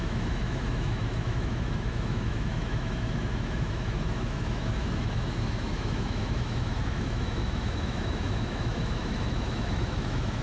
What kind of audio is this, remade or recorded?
remade